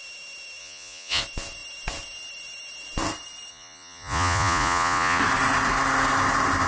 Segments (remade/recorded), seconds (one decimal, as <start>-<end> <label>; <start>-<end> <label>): 0.0-0.6 recorded; 0.6-1.2 remade; 1.2-3.5 recorded; 3.5-5.2 remade; 5.2-6.7 recorded